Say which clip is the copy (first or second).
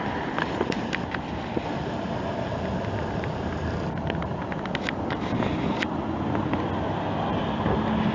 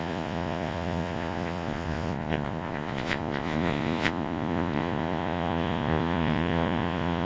second